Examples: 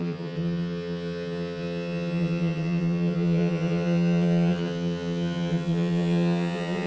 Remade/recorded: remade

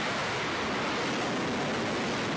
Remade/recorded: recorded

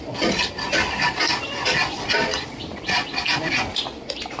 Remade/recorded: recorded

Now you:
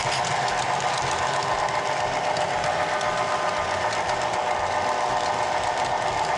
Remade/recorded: recorded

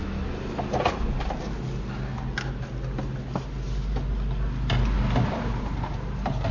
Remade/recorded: recorded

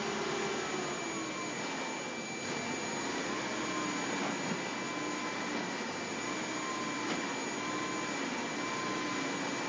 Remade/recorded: recorded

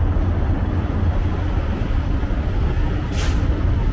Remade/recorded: recorded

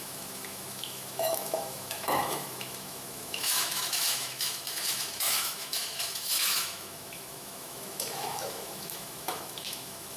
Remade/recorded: remade